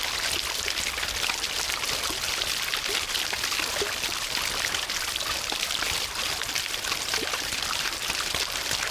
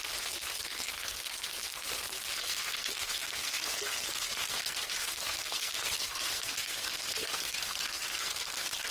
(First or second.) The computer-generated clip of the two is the second